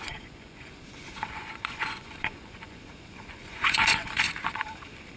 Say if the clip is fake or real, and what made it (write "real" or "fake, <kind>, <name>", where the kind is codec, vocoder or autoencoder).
fake, vocoder, Vocos